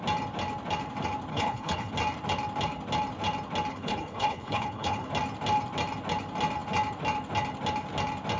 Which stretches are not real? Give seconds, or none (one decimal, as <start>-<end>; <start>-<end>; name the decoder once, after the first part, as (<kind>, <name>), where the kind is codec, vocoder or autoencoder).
1.3-1.9 (codec, HILCodec); 3.7-5.1